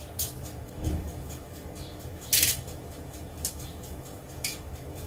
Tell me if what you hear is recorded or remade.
remade